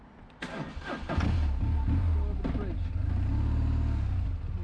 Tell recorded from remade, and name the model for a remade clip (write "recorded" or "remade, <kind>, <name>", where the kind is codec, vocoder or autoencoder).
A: recorded